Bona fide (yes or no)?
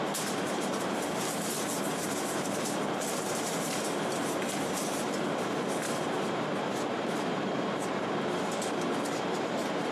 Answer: no